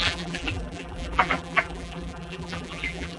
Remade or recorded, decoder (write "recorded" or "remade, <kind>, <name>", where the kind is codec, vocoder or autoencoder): remade, vocoder, BigVGAN v2